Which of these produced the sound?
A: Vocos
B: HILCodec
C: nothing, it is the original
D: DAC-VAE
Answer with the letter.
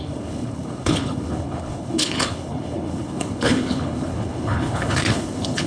B